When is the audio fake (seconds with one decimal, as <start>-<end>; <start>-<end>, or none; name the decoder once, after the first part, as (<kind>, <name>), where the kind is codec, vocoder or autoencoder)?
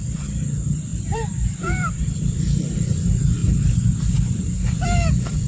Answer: 0.0-3.4 (vocoder, BigVGAN v2); 4.4-5.5